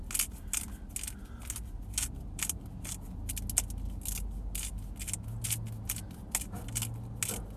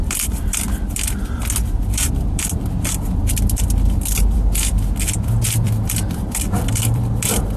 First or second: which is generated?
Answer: second